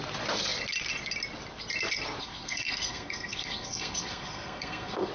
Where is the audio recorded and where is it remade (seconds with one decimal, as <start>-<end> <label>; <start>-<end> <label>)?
0.0-2.2 recorded; 2.2-5.1 remade